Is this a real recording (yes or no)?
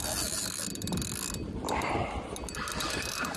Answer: yes